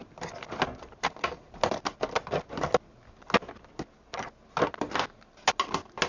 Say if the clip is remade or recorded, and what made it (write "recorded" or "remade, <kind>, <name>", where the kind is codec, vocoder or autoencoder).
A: recorded